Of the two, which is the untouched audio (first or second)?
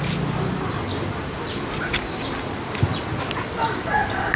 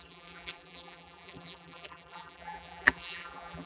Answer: first